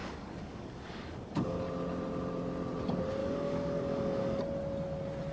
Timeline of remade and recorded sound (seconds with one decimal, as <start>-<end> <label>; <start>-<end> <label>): 0.0-1.6 remade; 1.6-3.2 recorded; 3.2-4.4 remade; 4.4-5.3 recorded